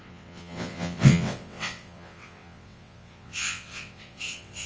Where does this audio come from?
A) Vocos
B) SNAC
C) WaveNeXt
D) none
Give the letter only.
C